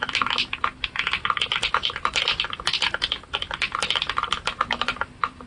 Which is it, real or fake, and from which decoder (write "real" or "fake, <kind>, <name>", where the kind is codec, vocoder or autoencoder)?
real